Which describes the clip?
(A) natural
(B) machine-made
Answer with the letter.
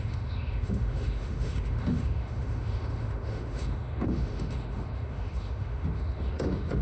B